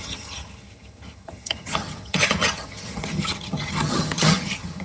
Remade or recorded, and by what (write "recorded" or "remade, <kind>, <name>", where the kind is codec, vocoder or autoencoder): remade, vocoder, HiFi-GAN